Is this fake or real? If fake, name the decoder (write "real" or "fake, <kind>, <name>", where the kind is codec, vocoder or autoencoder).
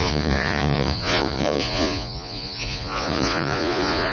fake, vocoder, Vocos